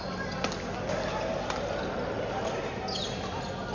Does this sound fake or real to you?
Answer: real